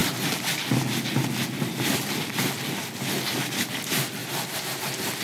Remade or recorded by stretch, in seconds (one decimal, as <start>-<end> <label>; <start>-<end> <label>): 0.0-4.2 recorded; 4.2-4.8 remade; 4.8-5.2 recorded